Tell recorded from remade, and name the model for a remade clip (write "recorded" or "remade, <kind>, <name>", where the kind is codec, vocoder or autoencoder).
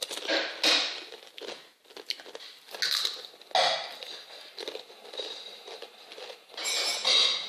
recorded